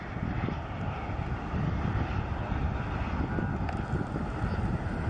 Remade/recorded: recorded